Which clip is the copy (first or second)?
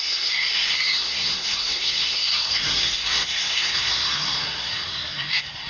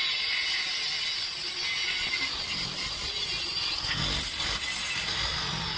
first